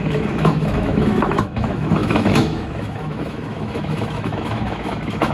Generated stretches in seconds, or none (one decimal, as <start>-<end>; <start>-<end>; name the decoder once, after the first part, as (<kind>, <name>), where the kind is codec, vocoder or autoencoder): 0.0-5.3 (autoencoder, DAC-VAE)